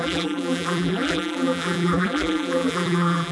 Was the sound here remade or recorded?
remade